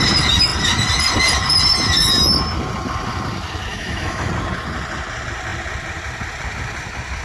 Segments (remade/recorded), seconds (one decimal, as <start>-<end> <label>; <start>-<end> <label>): 0.0-3.7 recorded; 3.7-4.3 remade; 4.3-7.2 recorded